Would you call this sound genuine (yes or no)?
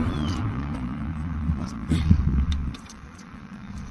no